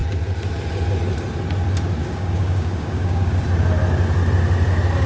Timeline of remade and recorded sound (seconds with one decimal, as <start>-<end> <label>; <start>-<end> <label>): 0.0-2.0 recorded; 2.0-3.4 remade; 3.4-5.1 recorded